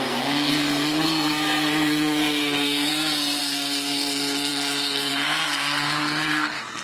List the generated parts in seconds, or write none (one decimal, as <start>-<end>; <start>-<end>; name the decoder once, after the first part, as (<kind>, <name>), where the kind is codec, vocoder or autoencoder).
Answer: 0.0-2.9 (codec, SNAC); 3.4-6.8